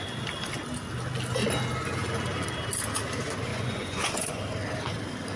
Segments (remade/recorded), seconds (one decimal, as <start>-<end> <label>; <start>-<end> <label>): 0.0-3.5 recorded; 3.5-4.4 remade; 4.4-5.4 recorded